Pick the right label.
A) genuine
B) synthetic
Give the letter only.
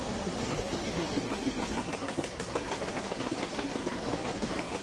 B